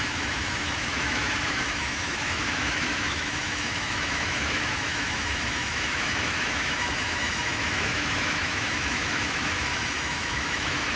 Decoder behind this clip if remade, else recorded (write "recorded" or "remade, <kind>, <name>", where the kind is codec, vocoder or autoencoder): remade, autoencoder, DAC-VAE